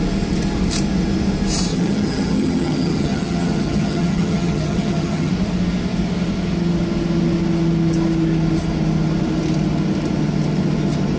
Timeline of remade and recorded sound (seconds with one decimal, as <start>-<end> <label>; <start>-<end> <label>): 0.0-1.7 recorded; 1.7-5.3 remade; 5.3-11.2 recorded